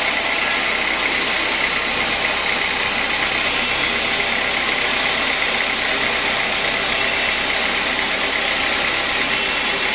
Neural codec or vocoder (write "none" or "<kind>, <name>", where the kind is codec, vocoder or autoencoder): none